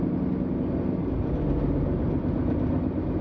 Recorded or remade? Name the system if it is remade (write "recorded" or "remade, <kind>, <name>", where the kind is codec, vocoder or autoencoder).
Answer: recorded